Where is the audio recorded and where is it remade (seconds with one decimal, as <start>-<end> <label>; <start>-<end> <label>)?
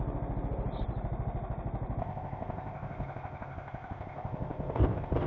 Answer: 0.0-2.0 recorded; 2.0-5.3 remade